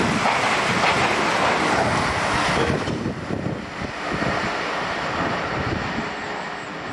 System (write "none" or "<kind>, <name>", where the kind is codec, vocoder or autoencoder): none